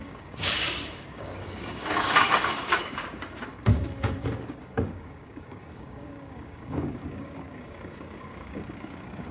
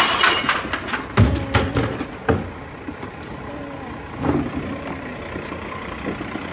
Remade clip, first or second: first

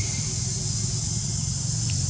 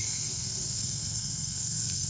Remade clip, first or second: second